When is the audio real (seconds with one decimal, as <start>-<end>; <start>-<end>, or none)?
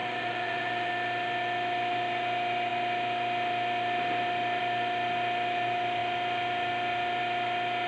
0.9-7.9